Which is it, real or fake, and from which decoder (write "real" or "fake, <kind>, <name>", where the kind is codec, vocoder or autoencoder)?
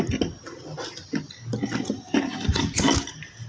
real